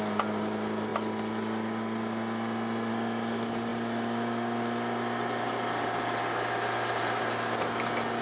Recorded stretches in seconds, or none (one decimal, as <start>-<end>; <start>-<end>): 0.0-8.2